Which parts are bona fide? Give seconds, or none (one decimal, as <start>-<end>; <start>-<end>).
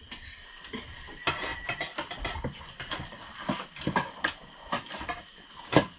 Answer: 0.0-6.0